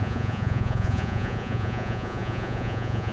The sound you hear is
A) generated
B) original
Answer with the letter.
A